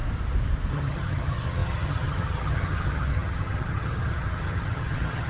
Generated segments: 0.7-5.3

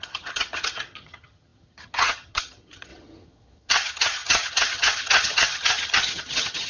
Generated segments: 0.0-6.7

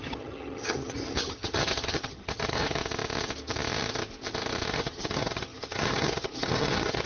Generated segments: 0.0-2.8; 4.7-7.1

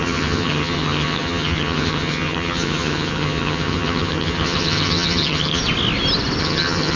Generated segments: 0.0-5.6; 6.4-7.0